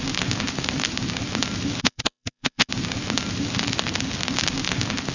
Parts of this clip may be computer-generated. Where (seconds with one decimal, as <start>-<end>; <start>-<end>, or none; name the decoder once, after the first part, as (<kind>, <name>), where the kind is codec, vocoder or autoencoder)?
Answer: 1.8-2.7 (vocoder, Vocos)

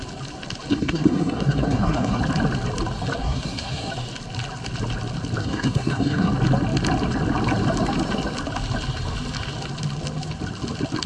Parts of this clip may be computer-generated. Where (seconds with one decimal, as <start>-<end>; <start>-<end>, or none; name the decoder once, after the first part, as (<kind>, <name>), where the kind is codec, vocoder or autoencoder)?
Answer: 0.7-2.2 (codec, SNAC); 3.2-3.9; 5.4-6.3

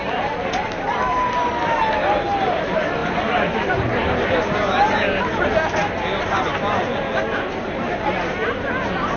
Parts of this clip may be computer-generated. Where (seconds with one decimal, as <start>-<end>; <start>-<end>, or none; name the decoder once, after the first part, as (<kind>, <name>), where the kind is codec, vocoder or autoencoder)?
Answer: none

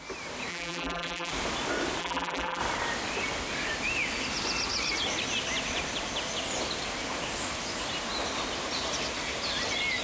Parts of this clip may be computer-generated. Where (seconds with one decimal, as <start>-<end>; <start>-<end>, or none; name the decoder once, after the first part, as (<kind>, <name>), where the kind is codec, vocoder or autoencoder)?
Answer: 0.5-1.3 (vocoder, BigVGAN v2); 2.0-2.6